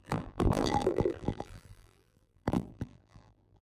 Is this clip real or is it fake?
fake